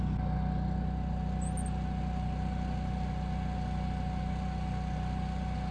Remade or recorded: recorded